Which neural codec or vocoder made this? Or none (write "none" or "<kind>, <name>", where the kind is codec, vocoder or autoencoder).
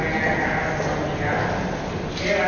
none